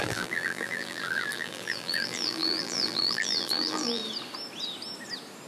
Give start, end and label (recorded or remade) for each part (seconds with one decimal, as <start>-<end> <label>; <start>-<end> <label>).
0.0-4.0 remade; 4.0-5.5 recorded

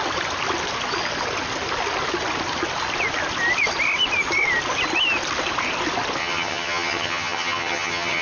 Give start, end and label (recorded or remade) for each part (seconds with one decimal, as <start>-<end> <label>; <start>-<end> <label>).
0.0-6.2 recorded; 6.2-8.2 remade

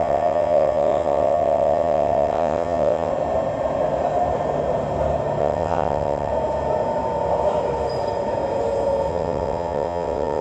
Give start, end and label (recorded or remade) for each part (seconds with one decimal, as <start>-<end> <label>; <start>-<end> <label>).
0.0-3.1 remade; 3.1-5.4 recorded; 5.4-6.3 remade; 6.3-9.1 recorded; 9.1-10.4 remade

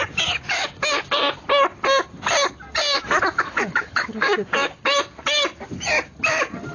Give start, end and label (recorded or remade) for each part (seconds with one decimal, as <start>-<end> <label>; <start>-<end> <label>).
0.0-3.0 recorded; 3.0-4.7 remade; 4.7-6.7 recorded

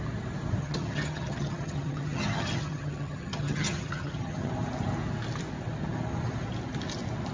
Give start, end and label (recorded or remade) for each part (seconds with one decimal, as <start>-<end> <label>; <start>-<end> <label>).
0.0-0.6 recorded; 0.6-4.5 remade; 4.5-7.3 recorded